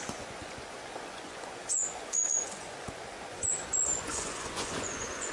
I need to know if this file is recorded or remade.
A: remade